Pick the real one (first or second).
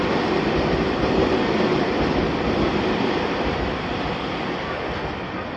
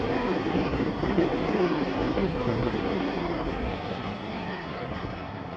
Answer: first